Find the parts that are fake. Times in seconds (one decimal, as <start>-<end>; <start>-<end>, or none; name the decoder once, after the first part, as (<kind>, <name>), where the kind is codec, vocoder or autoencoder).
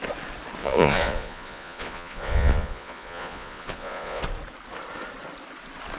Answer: 0.6-4.2 (vocoder, Vocos)